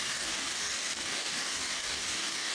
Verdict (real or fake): fake